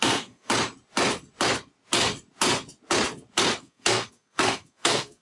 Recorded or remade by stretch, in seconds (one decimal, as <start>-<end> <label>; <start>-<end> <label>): 0.0-0.5 remade; 0.5-3.6 recorded; 3.6-5.2 remade